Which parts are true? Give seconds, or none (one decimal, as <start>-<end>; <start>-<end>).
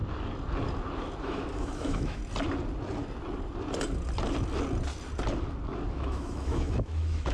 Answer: 0.0-1.2; 2.2-5.9